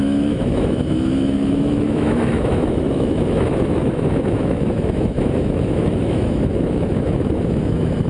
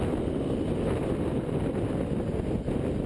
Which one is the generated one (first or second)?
first